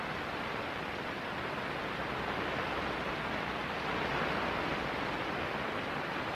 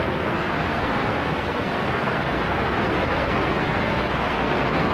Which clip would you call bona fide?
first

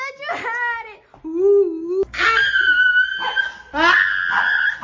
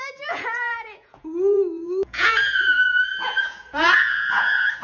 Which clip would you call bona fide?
first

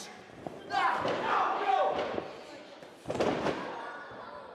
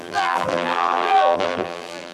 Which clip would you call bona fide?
first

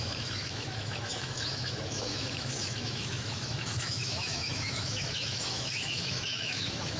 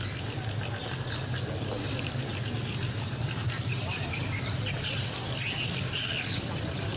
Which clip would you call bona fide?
second